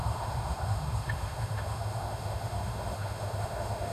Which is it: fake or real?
fake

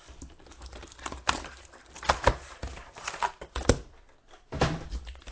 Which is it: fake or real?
real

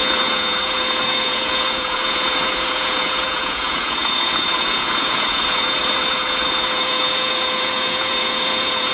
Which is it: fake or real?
fake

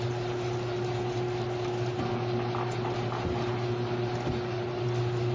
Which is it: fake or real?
real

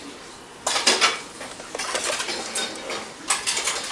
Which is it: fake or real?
real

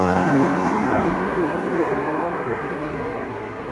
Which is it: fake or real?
fake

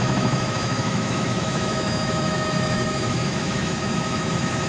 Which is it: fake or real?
fake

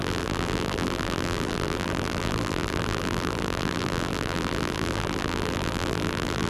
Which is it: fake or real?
fake